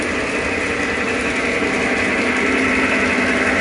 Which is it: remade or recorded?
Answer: recorded